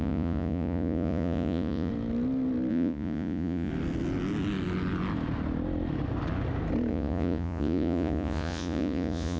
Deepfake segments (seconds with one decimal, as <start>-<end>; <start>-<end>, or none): 0.0-1.9; 2.7-3.7; 6.9-9.4